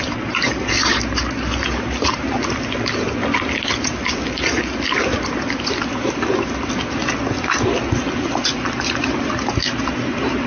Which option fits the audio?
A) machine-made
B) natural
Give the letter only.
B